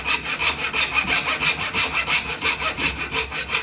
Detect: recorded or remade recorded